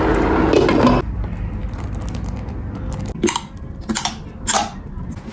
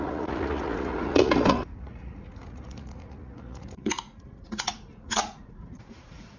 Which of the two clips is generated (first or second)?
second